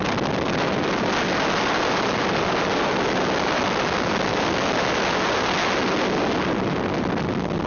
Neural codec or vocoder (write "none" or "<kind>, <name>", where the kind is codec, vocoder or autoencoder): none